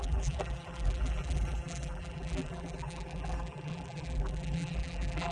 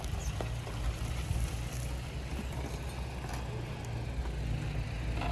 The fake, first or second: first